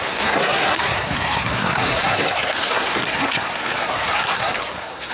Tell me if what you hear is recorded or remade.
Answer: remade